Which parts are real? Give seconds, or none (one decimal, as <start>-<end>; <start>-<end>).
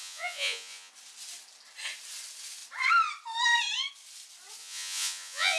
0.9-4.6